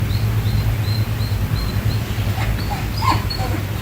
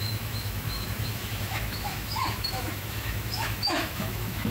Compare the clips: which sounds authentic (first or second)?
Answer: first